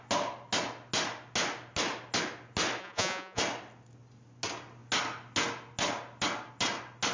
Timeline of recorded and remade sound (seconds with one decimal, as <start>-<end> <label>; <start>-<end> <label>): 0.0-2.8 recorded; 2.8-3.4 remade; 3.4-7.1 recorded